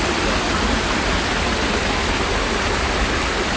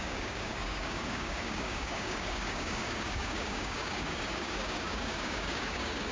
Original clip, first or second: first